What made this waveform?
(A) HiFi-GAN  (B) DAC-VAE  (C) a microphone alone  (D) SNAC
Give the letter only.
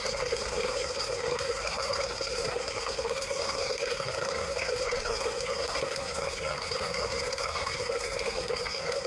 D